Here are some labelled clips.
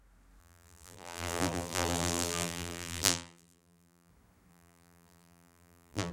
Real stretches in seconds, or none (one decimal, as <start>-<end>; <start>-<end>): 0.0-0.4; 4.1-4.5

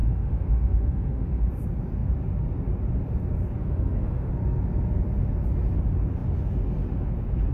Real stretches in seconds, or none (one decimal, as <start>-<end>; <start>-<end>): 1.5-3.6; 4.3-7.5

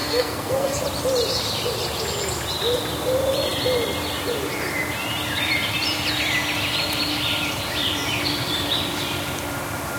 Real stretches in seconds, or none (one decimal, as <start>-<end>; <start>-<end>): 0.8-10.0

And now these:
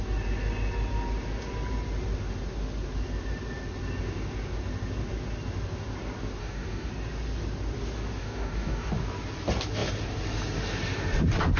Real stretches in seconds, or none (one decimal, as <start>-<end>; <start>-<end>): 0.0-6.4; 6.9-8.2; 8.9-11.6